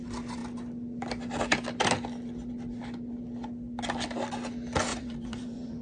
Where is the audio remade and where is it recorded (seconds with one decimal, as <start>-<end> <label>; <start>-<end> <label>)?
0.0-4.9 recorded; 4.9-5.8 remade